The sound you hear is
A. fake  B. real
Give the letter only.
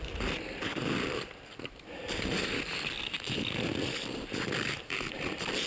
B